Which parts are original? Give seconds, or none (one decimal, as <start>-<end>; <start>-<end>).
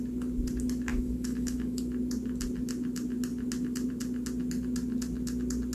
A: 0.0-0.9; 1.8-5.7